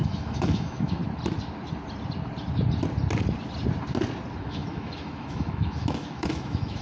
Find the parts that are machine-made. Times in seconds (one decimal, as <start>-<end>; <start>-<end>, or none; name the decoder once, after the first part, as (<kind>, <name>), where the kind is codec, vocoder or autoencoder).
0.0-1.0 (autoencoder, DAC-VAE); 4.4-6.8